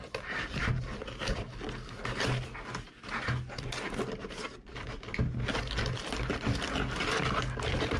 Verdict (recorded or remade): recorded